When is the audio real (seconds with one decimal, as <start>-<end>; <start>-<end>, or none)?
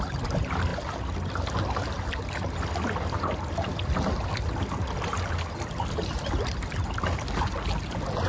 0.0-8.3